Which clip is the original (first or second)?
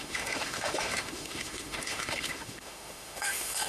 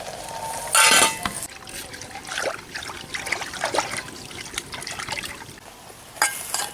second